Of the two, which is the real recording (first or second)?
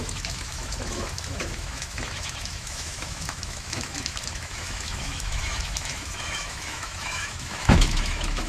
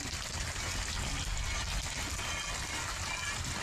second